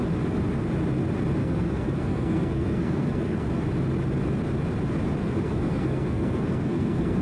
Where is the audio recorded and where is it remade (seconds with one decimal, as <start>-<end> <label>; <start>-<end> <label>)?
0.0-1.4 recorded; 1.4-3.5 remade; 3.5-5.2 recorded; 5.2-7.2 remade